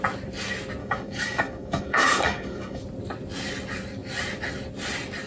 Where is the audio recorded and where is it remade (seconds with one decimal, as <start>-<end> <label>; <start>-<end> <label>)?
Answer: 0.0-0.8 recorded; 0.8-2.8 remade; 2.8-5.3 recorded